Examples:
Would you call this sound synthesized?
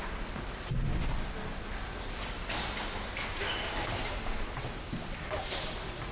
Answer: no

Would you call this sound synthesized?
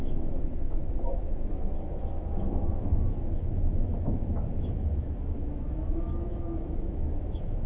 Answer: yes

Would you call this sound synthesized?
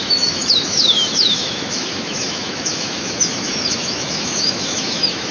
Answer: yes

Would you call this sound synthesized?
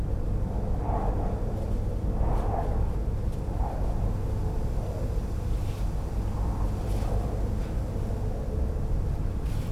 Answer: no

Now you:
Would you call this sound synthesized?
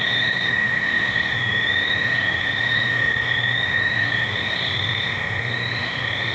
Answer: yes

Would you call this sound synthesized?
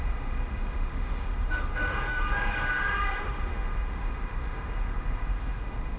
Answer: yes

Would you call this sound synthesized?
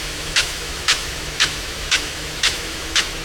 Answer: yes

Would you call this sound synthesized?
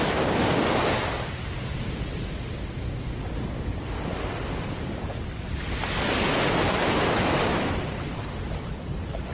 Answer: no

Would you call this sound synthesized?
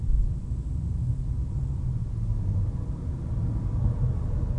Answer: no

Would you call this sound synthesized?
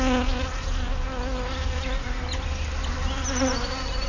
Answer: no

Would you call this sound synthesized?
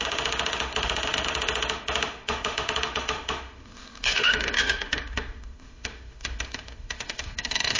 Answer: yes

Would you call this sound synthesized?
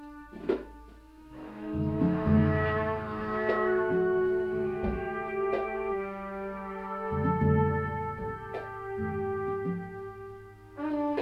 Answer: yes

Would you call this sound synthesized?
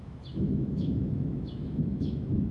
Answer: yes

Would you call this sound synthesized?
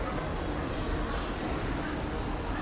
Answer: no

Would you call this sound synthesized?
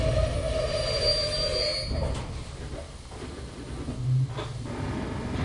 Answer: no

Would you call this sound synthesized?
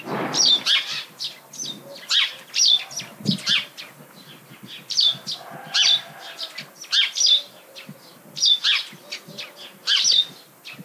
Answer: no